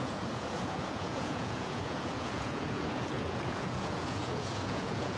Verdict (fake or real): fake